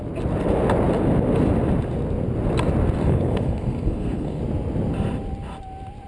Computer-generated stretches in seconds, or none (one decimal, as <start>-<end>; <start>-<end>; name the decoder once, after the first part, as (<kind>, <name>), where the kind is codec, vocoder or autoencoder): 3.0-4.4 (codec, SNAC)